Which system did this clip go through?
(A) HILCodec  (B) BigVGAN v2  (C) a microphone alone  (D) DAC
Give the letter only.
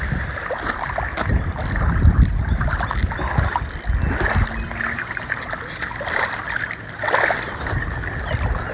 C